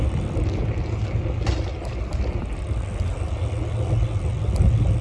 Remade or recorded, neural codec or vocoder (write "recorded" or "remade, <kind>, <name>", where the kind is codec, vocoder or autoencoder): recorded